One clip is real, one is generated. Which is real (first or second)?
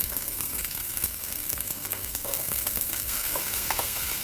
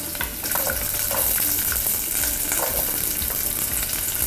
second